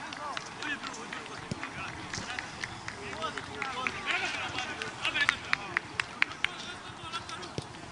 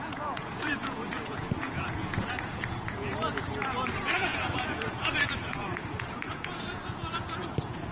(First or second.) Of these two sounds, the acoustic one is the first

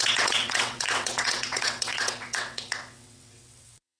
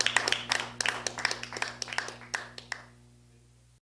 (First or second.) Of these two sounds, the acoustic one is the second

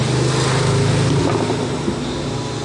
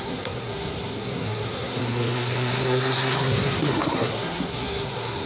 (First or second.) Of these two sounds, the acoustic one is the first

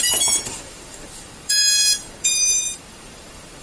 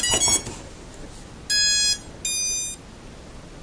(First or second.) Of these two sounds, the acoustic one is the second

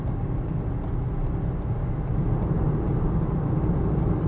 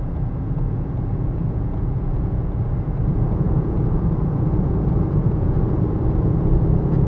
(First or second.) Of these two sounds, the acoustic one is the first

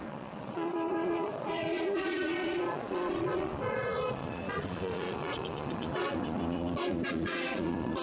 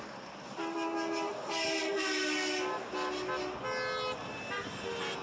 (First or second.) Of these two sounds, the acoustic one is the second